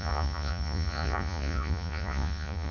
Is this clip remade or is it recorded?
remade